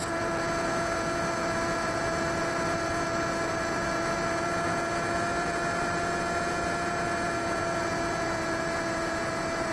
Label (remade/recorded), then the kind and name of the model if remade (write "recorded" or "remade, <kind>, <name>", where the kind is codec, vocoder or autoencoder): remade, vocoder, Vocos